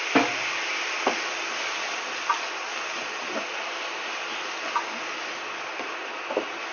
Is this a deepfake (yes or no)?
no